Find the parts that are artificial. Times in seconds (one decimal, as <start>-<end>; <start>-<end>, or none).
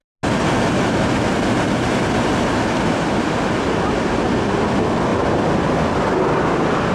none